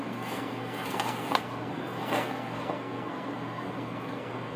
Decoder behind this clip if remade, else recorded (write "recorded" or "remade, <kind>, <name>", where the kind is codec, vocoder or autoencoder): remade, codec, SNAC